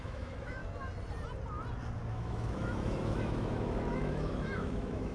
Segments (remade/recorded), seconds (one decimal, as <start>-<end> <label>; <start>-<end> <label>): 0.0-0.6 remade; 0.6-2.1 recorded; 2.1-5.1 remade